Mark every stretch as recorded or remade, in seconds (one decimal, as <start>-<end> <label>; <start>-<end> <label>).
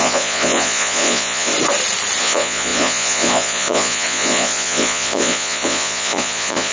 0.0-1.5 remade; 1.5-2.2 recorded; 2.2-6.7 remade